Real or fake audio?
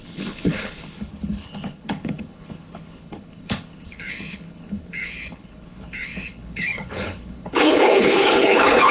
fake